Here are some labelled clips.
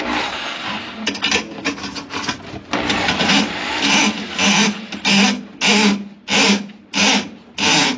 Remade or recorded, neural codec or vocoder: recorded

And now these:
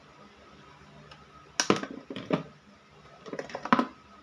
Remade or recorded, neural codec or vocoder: recorded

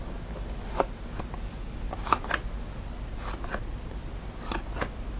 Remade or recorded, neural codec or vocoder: recorded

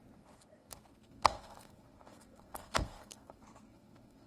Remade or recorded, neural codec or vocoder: remade, codec, SNAC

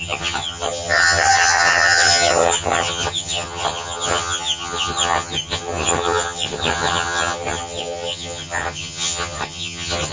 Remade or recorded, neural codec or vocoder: remade, vocoder, HiFi-GAN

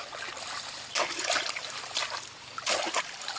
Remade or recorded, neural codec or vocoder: recorded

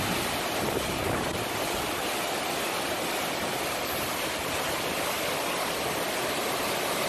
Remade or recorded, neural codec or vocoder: recorded